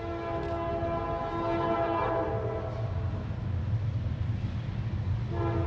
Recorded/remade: recorded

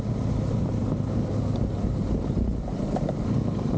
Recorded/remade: recorded